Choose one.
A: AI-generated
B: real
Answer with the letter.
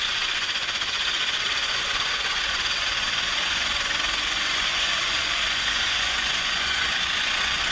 A